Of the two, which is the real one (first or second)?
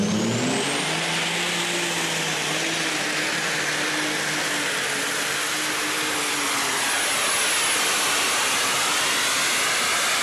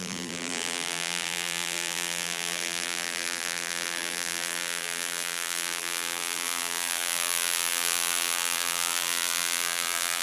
first